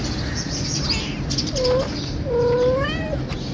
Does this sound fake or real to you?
real